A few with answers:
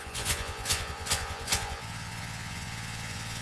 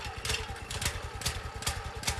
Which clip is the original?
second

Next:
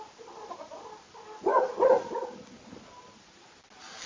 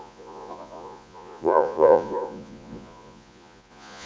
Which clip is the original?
first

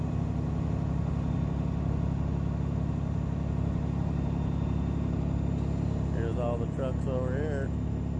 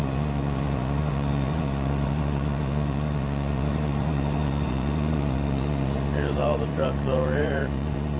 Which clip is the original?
first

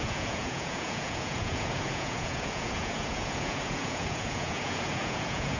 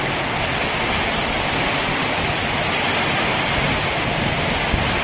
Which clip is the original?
second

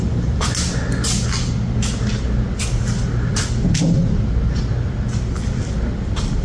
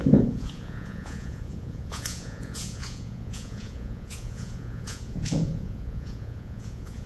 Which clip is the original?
first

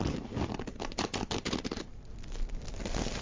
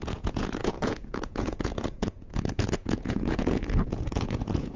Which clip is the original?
first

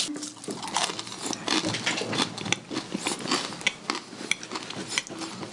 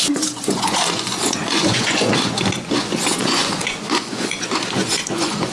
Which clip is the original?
first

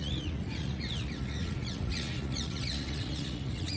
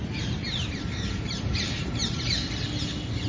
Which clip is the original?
second